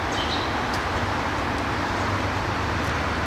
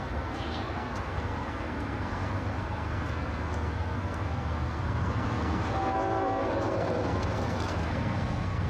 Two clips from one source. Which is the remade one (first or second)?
second